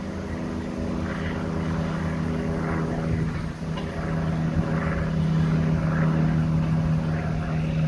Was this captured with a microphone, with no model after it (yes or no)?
yes